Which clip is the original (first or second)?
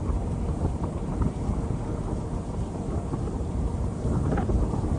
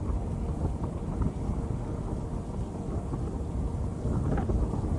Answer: second